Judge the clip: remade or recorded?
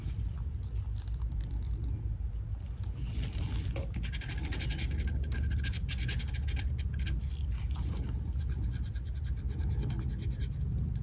recorded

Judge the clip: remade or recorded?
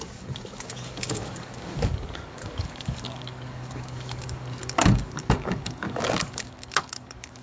remade